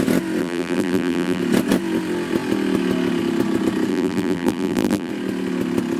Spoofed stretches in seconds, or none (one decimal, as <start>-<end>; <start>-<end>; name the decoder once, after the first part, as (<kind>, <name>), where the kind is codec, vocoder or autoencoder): 0.4-1.4 (vocoder, BigVGAN v2); 3.9-5.1